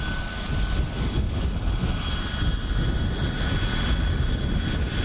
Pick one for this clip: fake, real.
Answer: real